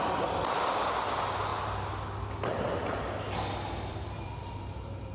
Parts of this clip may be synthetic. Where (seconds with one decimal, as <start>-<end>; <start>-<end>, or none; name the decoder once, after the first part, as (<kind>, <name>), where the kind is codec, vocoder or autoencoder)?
none